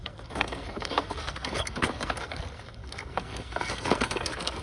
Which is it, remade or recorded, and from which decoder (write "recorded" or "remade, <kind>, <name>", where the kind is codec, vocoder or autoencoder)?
remade, codec, SNAC